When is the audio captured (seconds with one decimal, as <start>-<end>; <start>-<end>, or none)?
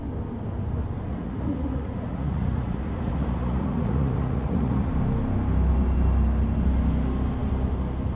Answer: 0.0-1.1; 4.9-8.2